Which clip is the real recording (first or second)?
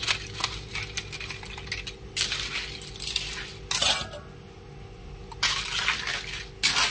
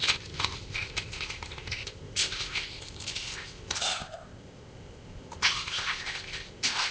first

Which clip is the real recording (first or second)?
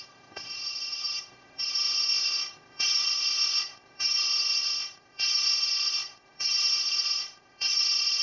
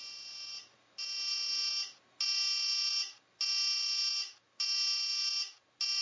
second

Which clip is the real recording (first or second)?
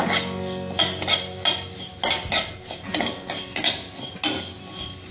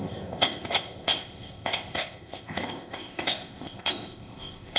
first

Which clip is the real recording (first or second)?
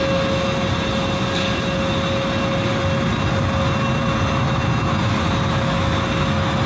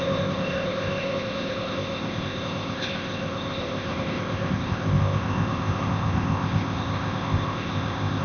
first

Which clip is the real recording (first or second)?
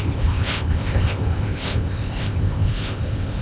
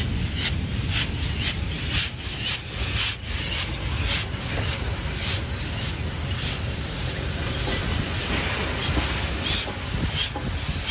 second